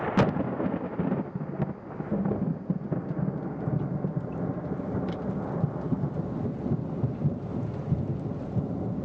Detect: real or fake real